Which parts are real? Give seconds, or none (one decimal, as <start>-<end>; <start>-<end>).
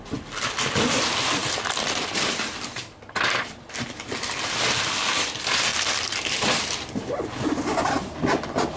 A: 0.0-1.4; 4.2-8.8